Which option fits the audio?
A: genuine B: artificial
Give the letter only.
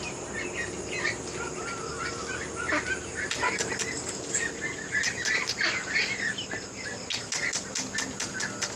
A